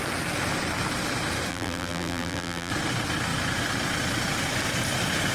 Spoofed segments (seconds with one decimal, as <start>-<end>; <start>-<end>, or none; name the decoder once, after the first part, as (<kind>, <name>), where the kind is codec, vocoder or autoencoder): 1.5-2.7 (vocoder, BigVGAN v2)